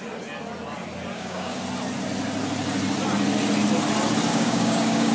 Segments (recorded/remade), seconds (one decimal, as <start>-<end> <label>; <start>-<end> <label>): 0.0-1.1 recorded; 1.1-1.6 remade; 1.6-4.3 recorded; 4.3-5.1 remade